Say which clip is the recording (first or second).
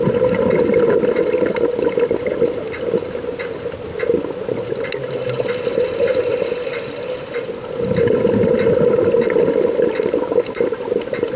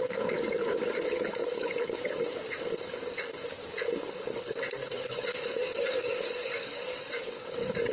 first